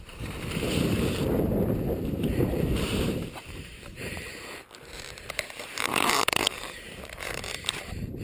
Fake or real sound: fake